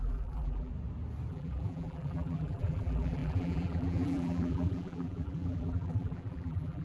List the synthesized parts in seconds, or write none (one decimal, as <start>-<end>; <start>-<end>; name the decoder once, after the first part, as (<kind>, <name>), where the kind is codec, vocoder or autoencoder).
0.0-0.7 (vocoder, BigVGAN v2); 1.3-6.8